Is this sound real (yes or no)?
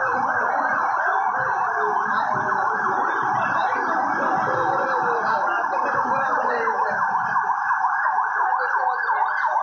yes